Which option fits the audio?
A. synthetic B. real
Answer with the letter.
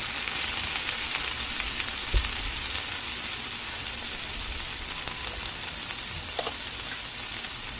B